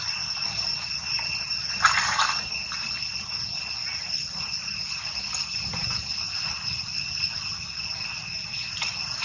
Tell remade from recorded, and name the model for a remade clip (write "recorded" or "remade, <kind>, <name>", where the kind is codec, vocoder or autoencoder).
recorded